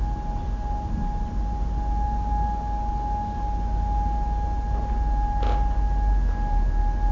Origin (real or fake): real